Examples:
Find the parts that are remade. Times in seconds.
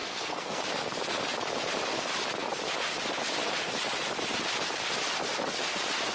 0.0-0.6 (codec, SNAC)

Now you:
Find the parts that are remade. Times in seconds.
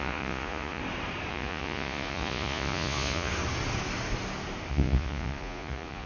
0.0-0.8 (vocoder, Vocos); 1.3-3.3; 4.7-6.1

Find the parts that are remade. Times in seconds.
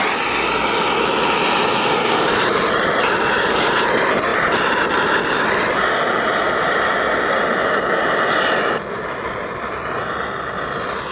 none